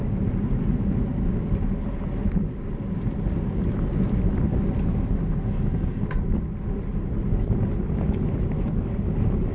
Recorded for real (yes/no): yes